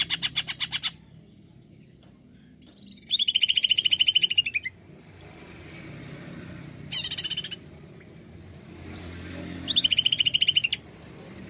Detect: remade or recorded recorded